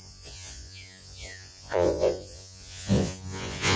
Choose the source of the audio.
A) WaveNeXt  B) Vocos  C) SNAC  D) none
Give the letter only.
B